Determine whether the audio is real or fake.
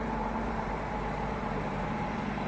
fake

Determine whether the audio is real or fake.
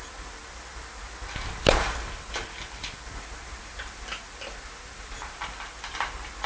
real